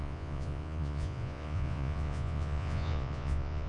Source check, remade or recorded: remade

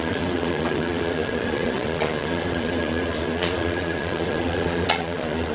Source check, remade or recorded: remade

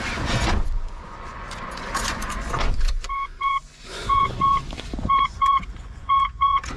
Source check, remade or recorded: remade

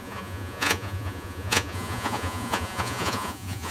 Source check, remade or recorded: remade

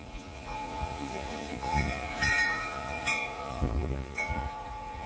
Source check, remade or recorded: remade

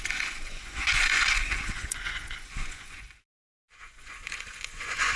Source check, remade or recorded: remade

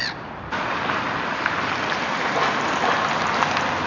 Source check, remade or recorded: recorded